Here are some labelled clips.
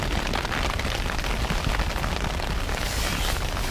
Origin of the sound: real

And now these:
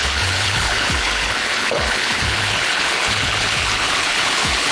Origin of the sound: fake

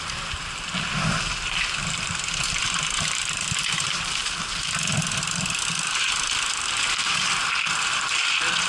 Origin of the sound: real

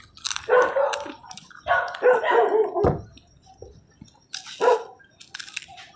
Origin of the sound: real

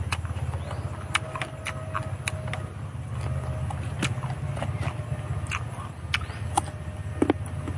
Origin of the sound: real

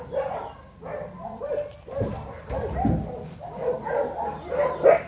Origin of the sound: real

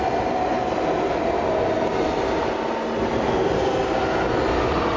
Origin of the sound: real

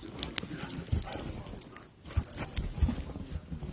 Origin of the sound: real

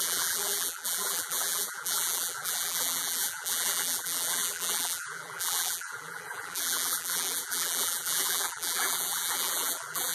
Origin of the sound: fake